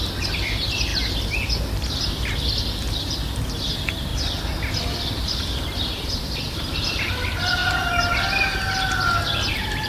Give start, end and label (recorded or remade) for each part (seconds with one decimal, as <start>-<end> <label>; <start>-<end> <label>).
0.0-0.9 remade; 0.9-2.6 recorded; 2.6-4.1 remade; 4.1-4.7 recorded; 4.7-7.6 remade; 7.6-9.5 recorded; 9.5-9.9 remade